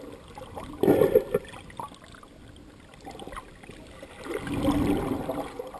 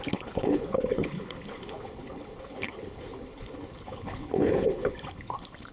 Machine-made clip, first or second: second